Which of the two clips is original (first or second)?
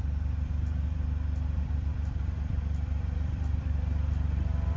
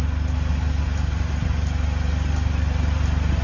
second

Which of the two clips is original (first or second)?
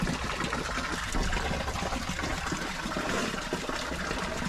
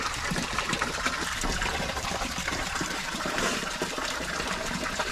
first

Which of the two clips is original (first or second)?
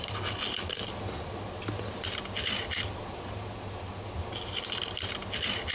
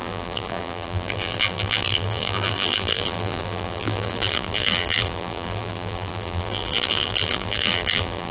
first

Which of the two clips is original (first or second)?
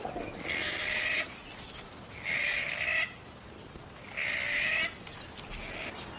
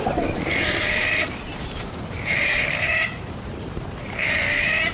first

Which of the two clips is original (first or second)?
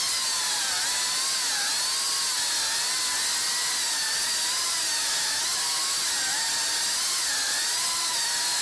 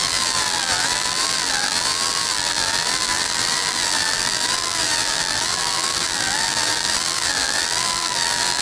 first